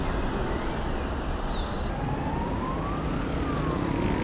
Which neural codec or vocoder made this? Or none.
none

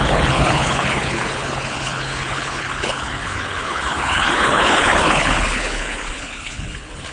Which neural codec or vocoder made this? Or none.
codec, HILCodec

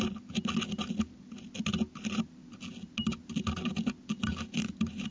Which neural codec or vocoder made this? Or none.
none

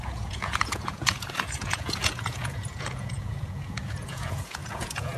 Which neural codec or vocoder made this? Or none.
vocoder, Vocos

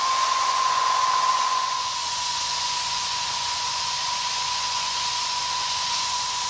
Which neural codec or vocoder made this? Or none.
vocoder, Vocos